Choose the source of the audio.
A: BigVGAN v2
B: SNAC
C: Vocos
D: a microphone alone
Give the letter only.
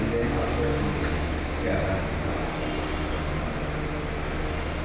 D